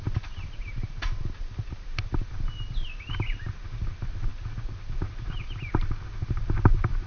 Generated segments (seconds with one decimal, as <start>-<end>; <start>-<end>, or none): none